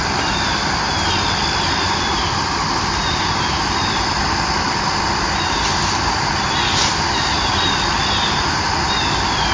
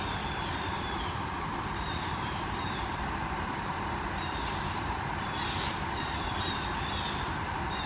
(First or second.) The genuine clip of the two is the first